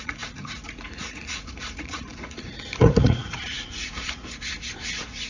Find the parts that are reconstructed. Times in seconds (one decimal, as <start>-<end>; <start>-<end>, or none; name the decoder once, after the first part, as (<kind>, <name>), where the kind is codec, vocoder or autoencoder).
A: 0.0-5.3 (vocoder, Vocos)